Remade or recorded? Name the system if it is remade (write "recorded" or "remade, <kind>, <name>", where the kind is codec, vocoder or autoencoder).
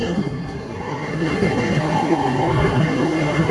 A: remade, codec, SNAC